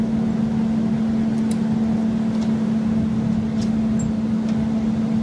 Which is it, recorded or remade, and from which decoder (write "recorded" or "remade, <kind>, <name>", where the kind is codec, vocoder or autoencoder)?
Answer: recorded